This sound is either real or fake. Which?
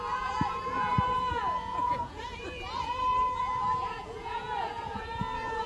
fake